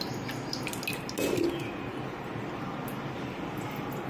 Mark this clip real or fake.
real